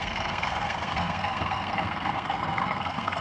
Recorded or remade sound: remade